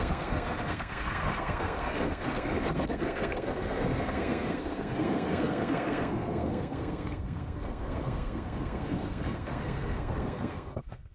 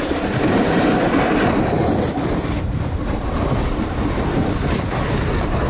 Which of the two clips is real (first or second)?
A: second